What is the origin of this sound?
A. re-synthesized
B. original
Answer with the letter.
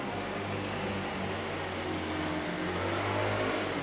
B